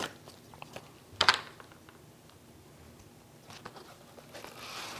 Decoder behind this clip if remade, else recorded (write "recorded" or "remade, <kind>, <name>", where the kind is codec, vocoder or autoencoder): recorded